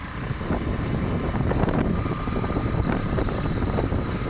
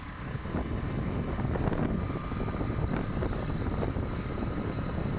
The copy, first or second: first